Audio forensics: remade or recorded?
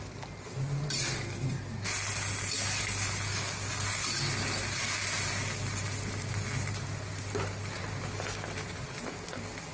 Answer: recorded